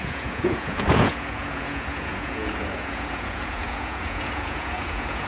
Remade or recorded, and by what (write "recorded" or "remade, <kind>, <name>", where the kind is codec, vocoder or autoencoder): remade, vocoder, Vocos